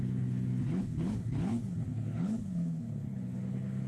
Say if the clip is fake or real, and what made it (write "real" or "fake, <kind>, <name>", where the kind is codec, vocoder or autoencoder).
fake, codec, HILCodec